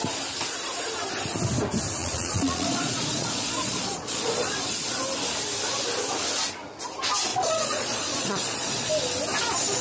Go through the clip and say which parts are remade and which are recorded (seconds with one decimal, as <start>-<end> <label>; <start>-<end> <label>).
0.0-2.0 recorded; 2.0-5.0 remade; 5.0-7.3 recorded; 7.3-8.9 remade; 8.9-9.8 recorded